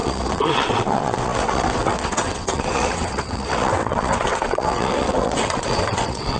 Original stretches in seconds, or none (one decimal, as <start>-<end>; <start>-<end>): none